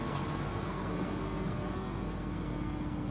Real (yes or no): no